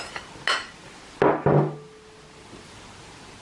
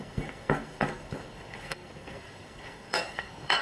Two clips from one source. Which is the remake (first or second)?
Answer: second